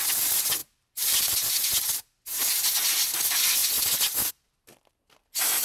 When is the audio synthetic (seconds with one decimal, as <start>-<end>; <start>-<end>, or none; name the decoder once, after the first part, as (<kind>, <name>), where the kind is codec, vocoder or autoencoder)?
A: 0.6-1.2 (vocoder, BigVGAN v2)